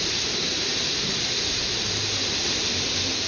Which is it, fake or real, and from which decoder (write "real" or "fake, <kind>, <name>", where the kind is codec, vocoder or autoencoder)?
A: fake, vocoder, BigVGAN v2